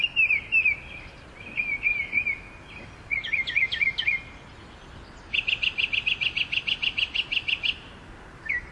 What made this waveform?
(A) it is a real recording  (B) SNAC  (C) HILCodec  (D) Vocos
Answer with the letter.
A